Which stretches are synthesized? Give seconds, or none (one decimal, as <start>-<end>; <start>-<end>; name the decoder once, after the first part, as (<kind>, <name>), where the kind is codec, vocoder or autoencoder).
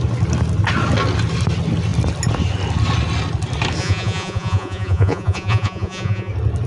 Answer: 3.8-6.3 (vocoder, Vocos)